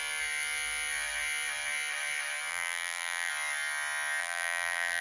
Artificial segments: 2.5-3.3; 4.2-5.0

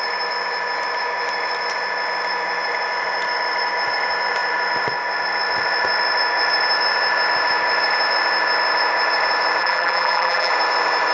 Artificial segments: 9.6-10.5

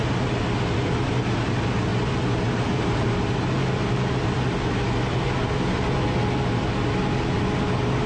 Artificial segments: none

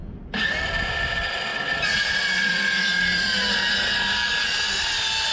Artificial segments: none